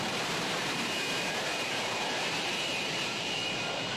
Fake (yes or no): yes